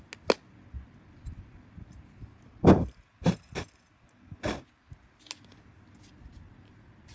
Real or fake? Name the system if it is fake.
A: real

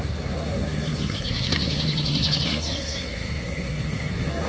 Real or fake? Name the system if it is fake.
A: fake, codec, SNAC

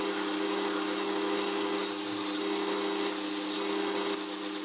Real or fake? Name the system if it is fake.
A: real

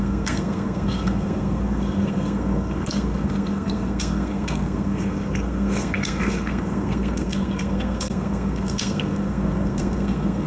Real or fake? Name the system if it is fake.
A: fake, codec, SNAC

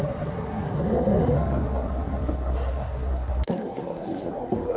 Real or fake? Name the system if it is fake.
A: fake, codec, SNAC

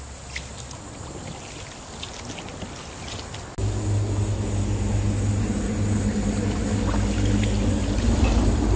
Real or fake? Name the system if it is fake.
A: real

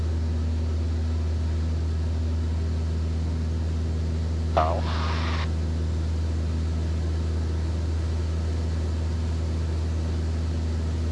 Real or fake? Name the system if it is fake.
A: real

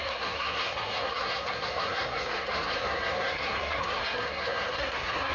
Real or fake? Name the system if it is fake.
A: fake, codec, SNAC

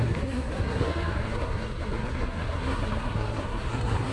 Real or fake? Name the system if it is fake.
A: fake, codec, SNAC